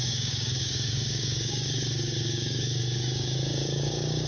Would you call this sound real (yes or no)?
no